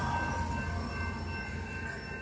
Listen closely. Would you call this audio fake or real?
real